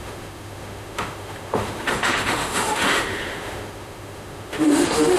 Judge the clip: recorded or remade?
remade